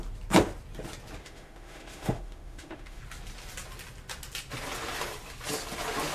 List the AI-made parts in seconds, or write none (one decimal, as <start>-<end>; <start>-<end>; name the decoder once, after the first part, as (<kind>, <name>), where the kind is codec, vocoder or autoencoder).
1.2-3.0 (autoencoder, DAC-VAE)